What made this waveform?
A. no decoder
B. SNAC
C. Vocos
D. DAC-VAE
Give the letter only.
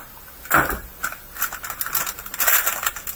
A